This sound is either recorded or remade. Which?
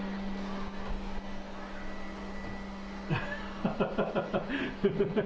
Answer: recorded